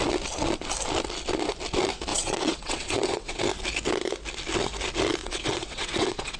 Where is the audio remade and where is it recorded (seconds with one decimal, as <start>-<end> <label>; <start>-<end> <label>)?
0.0-2.1 recorded; 2.1-3.4 remade; 3.4-5.2 recorded; 5.2-6.4 remade